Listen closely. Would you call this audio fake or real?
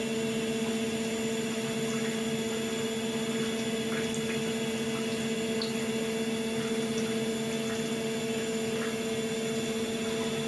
real